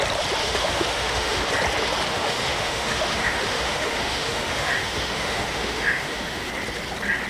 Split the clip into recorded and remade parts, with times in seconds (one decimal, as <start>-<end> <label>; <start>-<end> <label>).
0.0-0.4 recorded; 0.4-1.5 remade; 1.5-2.1 recorded; 2.1-6.5 remade; 6.5-7.3 recorded